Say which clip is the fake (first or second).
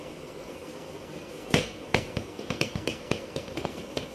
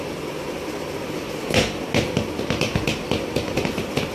first